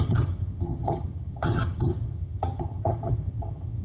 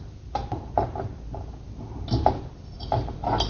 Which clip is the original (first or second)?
second